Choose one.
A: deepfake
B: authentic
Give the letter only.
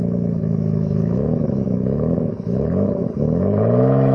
A